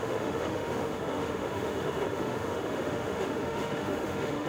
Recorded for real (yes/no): no